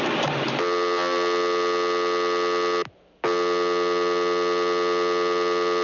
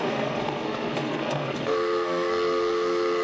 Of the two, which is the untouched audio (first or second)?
first